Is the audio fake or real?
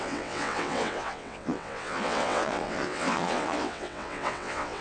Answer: fake